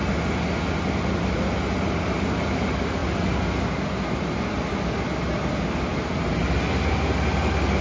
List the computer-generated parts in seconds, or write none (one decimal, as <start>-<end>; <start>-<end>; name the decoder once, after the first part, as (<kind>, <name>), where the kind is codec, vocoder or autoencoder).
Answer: none